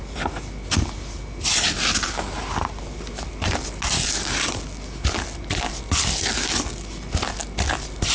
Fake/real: real